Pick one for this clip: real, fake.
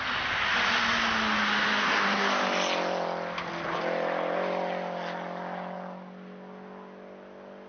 real